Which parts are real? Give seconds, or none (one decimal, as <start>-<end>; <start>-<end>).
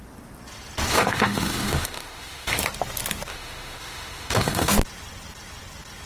0.0-0.9; 2.6-3.3; 4.7-6.1